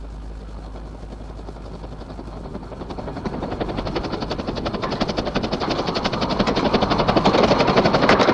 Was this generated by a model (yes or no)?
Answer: no